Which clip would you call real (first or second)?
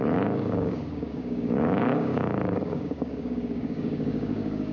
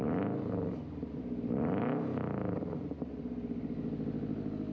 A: second